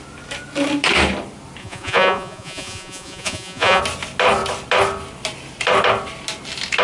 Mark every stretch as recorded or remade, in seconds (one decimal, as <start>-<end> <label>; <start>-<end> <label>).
0.0-1.6 recorded; 1.6-3.8 remade; 3.8-6.8 recorded